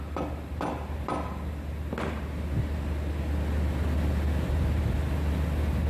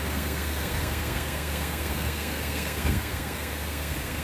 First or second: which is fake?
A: second